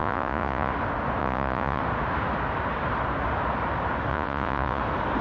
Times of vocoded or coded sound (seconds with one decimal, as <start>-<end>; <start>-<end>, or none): 0.0-0.7; 1.2-1.8; 4.1-4.8